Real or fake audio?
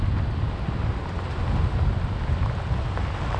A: real